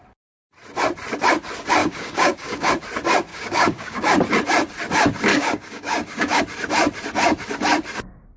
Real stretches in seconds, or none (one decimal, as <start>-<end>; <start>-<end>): 0.0-1.8; 2.7-3.3; 4.2-5.3; 6.4-8.4